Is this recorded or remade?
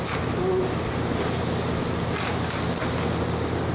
recorded